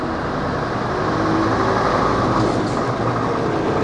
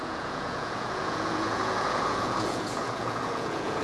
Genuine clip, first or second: first